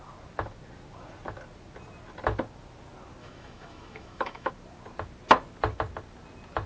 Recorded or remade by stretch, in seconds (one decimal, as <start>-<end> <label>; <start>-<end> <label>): 0.0-3.2 recorded; 3.2-4.5 remade; 4.5-6.7 recorded